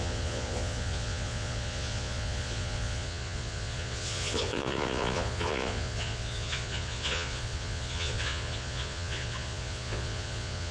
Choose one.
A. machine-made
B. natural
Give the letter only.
A